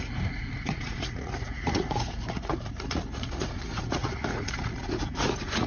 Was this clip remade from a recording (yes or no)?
yes